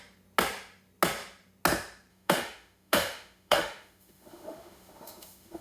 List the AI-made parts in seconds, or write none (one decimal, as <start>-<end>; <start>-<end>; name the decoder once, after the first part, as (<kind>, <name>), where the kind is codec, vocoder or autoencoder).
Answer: 2.1-5.6 (autoencoder, DAC-VAE)

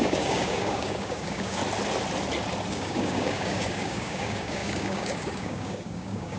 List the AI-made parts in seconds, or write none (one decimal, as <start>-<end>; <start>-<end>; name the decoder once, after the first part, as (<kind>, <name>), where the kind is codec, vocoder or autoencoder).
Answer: 0.0-1.6 (codec, DAC); 2.7-6.4

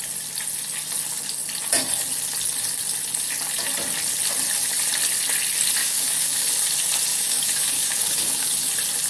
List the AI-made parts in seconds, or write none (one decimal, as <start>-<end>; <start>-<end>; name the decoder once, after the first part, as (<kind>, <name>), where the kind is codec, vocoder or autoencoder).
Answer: 5.8-6.5 (codec, DAC); 7.1-8.7

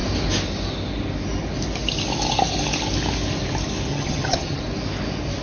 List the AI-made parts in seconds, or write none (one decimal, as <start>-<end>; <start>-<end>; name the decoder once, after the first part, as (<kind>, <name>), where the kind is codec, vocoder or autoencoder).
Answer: 3.9-4.6 (vocoder, HiFi-GAN)

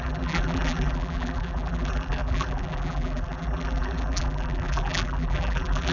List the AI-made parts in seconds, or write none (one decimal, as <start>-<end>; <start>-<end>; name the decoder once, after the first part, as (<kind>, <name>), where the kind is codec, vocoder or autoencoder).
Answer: 0.0-5.9 (vocoder, BigVGAN v2)

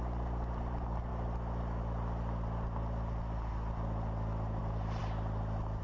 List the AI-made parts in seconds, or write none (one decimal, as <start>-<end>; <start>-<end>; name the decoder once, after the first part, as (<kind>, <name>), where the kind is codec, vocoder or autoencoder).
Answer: 0.0-1.1 (vocoder, BigVGAN v2); 4.6-5.0